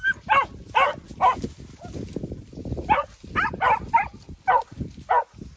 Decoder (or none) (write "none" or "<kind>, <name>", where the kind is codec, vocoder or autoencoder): none